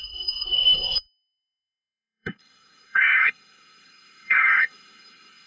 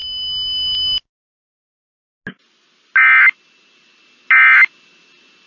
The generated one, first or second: first